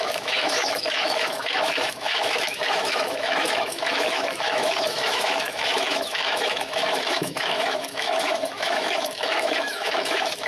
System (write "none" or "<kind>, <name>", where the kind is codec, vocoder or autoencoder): autoencoder, DAC-VAE